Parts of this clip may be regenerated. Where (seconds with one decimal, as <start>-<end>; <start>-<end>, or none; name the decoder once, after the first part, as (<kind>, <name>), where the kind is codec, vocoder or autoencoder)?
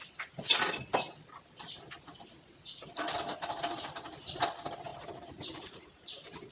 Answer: 4.9-6.5 (vocoder, BigVGAN v2)